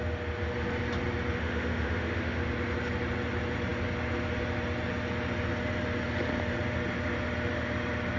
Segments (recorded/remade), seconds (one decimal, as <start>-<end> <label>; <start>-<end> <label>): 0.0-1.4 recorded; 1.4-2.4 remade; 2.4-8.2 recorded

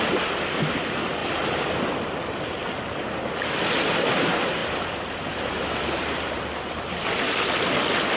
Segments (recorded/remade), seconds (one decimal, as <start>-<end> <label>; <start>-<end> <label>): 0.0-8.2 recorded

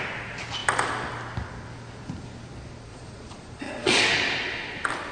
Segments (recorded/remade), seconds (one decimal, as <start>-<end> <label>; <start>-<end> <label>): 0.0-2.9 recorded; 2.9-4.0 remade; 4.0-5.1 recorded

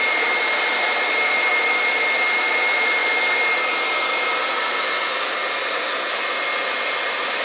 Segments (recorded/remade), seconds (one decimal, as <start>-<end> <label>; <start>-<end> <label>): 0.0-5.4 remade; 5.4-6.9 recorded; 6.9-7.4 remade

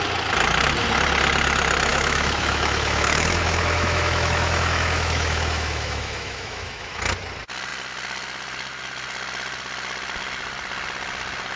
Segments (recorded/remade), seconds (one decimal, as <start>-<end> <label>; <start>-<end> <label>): 0.0-1.9 recorded; 1.9-7.0 remade; 7.0-11.6 recorded

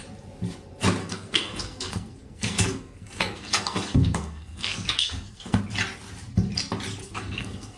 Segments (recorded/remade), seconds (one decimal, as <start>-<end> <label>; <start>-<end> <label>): 0.0-1.0 recorded; 1.0-5.6 remade; 5.6-7.0 recorded; 7.0-7.8 remade

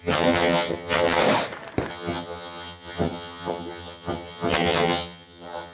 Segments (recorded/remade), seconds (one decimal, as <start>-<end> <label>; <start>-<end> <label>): 0.0-1.2 remade; 1.2-1.9 recorded; 1.9-5.7 remade

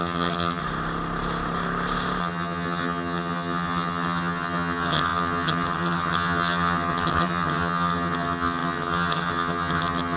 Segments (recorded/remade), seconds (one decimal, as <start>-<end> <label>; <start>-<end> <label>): 0.0-0.6 remade; 0.6-2.2 recorded; 2.2-10.2 remade